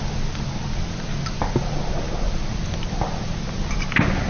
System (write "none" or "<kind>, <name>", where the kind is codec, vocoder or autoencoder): none